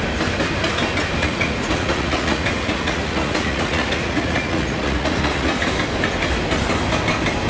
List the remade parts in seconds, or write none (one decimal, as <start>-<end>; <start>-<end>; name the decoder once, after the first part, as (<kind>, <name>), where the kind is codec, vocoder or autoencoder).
1.2-5.7 (vocoder, Vocos)